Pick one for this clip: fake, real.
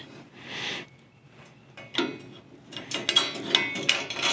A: real